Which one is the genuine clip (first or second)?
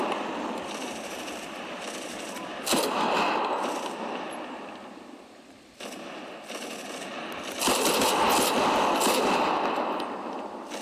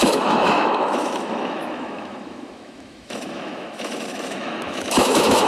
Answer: first